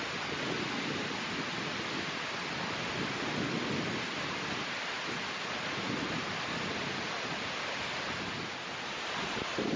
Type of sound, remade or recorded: recorded